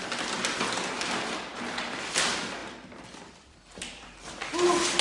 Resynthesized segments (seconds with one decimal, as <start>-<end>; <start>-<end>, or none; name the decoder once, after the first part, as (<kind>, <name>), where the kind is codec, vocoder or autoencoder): 2.6-4.4 (vocoder, BigVGAN v2)